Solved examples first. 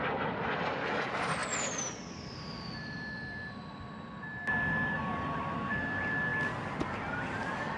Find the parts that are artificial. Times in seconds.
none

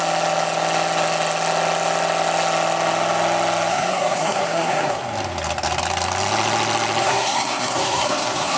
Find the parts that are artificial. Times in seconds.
3.7-5.0 (codec, SNAC); 7.0-8.6

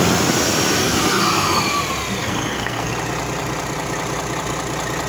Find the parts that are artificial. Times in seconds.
0.8-1.6 (codec, SNAC); 2.2-2.9

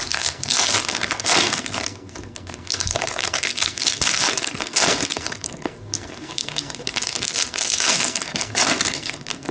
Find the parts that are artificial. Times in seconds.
0.0-9.5 (codec, SNAC)

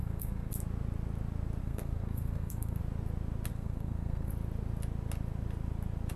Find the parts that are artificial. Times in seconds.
0.0-0.5 (codec, SNAC); 1.6-2.8; 3.5-4.3